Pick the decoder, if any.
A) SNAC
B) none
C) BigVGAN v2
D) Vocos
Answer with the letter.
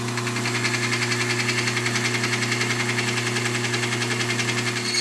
B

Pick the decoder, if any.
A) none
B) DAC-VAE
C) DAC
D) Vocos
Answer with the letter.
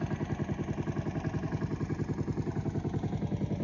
A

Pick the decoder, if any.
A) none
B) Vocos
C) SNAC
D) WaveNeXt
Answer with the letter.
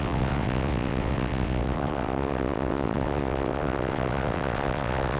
D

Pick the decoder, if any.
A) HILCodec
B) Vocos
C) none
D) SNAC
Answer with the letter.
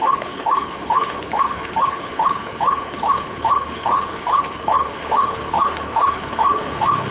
A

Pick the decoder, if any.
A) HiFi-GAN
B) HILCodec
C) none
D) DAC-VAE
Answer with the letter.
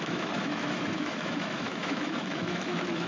D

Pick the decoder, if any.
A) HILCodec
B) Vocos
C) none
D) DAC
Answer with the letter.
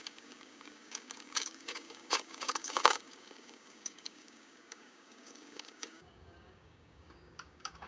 D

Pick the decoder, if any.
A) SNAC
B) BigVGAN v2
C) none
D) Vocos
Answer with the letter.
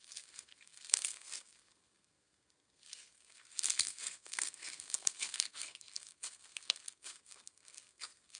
A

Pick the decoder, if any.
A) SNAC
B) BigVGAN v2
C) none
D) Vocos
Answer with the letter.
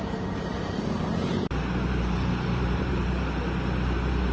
B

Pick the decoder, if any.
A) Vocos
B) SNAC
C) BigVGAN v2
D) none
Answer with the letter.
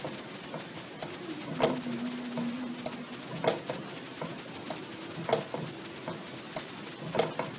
D